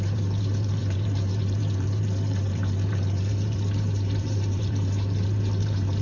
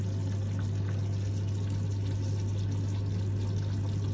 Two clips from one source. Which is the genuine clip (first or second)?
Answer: second